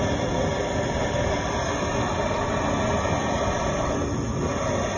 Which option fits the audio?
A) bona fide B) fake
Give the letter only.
A